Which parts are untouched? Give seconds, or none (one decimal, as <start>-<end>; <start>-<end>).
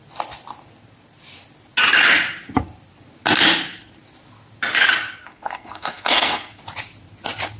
0.0-5.2; 6.6-7.6